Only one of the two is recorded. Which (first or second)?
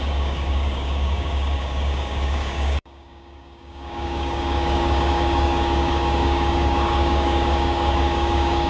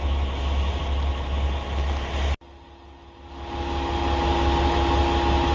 second